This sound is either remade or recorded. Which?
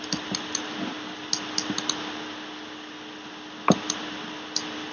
recorded